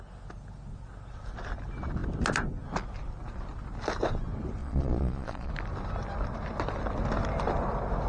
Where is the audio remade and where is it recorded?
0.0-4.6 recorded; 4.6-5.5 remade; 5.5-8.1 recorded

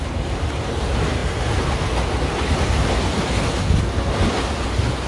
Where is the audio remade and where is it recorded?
0.0-1.2 remade; 1.2-4.3 recorded; 4.3-5.1 remade